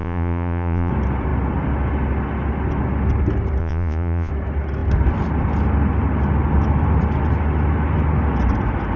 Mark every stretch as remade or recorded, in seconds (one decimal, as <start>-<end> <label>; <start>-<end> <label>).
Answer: 0.0-0.9 remade; 0.9-3.6 recorded; 3.6-4.3 remade; 4.3-9.0 recorded

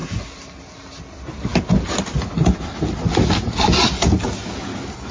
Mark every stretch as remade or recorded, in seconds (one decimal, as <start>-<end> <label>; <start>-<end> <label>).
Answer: 0.0-5.1 recorded

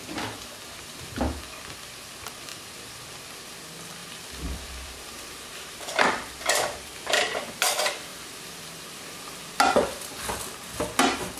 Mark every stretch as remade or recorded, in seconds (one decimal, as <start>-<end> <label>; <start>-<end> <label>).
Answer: 0.0-2.5 recorded; 2.5-3.1 remade; 3.1-4.0 recorded; 4.0-7.5 remade; 7.5-11.4 recorded

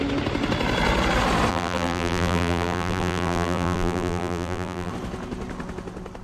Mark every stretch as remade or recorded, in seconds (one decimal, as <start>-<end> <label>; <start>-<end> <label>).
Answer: 0.0-1.5 recorded; 1.5-4.9 remade; 4.9-6.2 recorded

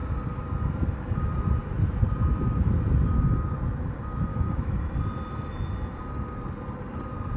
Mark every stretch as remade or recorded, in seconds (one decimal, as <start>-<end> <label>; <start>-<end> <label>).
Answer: 0.0-4.3 recorded; 4.3-4.8 remade; 4.8-7.4 recorded

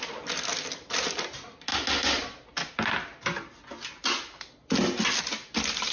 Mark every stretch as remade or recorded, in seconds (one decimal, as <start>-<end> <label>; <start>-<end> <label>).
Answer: 0.0-5.9 recorded

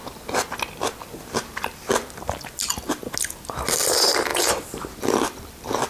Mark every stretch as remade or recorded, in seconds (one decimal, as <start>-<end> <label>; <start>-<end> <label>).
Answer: 0.0-5.9 recorded

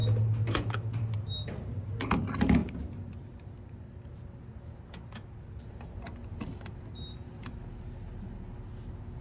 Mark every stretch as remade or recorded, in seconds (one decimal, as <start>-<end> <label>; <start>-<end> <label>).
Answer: 0.0-9.2 recorded